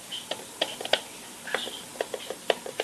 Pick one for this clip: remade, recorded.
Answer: recorded